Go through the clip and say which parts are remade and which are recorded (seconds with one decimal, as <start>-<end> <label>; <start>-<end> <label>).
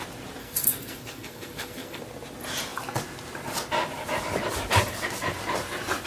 0.0-0.4 recorded; 0.4-2.0 remade; 2.0-6.1 recorded